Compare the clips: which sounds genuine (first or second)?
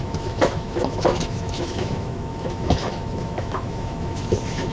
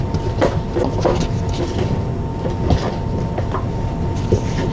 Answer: second